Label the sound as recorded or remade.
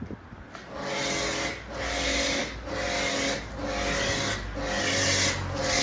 recorded